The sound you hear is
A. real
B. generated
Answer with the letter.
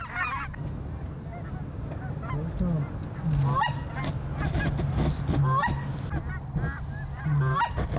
A